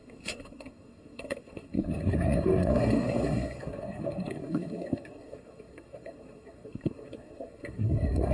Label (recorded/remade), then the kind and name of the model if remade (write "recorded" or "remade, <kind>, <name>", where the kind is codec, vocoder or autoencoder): remade, codec, SNAC